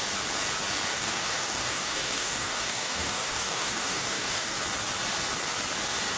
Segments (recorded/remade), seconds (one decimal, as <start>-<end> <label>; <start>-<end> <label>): 0.0-0.9 recorded; 0.9-4.6 remade; 4.6-6.2 recorded